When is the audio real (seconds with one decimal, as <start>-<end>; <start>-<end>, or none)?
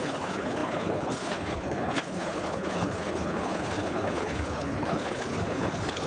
none